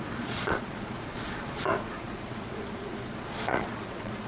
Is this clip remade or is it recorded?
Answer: remade